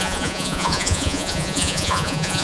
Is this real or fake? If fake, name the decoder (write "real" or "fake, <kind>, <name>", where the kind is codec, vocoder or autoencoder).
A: fake, vocoder, Vocos